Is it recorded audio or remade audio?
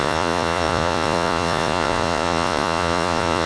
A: remade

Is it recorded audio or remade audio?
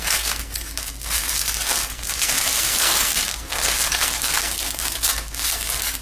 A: remade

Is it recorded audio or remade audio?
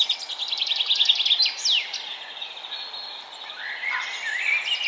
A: recorded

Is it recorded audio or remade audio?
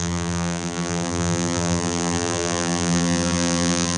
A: remade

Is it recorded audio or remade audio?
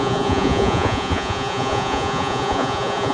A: remade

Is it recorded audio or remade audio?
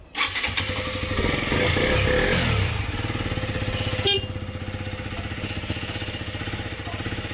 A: recorded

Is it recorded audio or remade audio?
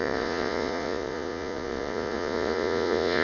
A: remade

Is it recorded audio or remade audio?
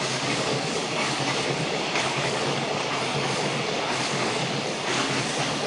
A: remade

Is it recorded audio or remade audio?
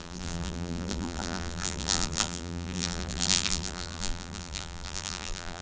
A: remade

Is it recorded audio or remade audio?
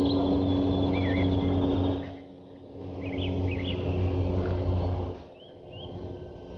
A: recorded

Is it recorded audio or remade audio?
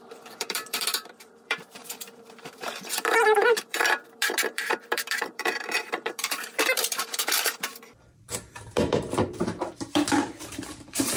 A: remade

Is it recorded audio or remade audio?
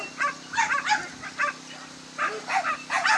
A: recorded